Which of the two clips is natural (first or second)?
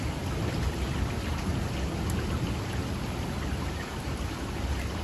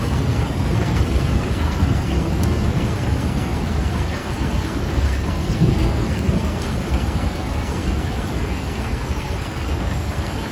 first